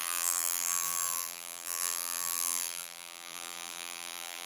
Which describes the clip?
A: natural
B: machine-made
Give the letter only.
B